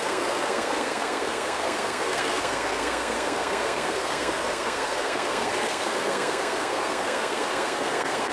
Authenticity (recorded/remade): remade